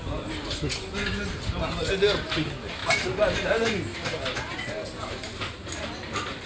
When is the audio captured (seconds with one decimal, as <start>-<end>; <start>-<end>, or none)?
0.0-6.5

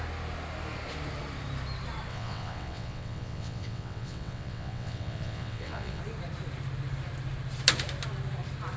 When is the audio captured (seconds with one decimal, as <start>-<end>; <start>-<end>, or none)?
0.0-2.1; 6.0-8.8

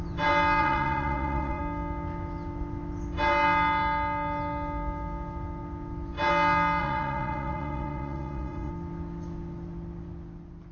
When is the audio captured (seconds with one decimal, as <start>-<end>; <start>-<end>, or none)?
0.0-0.6; 1.6-6.8; 8.7-10.7